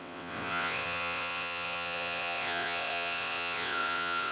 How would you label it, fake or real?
fake